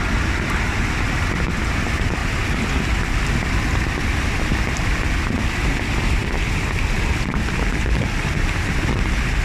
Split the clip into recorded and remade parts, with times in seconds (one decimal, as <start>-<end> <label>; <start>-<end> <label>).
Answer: 0.0-9.4 recorded